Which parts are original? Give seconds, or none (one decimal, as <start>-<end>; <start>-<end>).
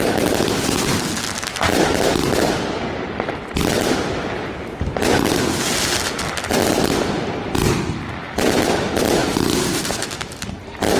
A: 0.0-9.2; 10.5-11.0